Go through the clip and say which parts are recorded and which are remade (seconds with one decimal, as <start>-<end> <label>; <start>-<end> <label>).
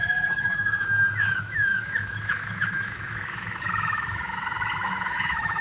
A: 0.0-5.6 remade